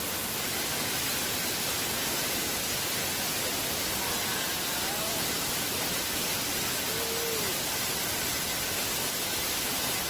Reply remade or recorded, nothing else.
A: recorded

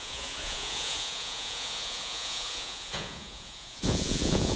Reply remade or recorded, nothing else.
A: remade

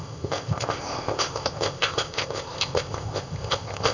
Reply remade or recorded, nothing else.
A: remade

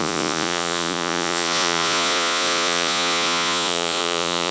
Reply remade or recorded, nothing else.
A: remade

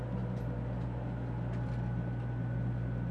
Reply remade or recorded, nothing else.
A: recorded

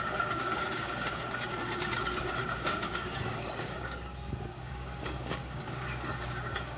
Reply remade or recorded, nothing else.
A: remade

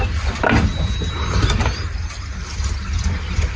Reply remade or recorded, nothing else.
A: recorded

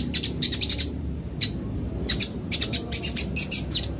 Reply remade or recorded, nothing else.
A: remade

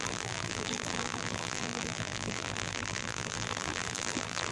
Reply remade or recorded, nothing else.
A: remade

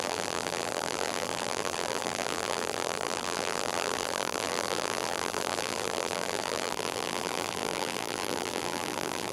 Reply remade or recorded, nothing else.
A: remade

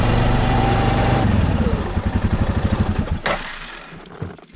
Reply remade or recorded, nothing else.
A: remade